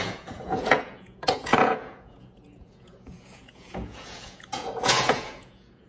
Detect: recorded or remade remade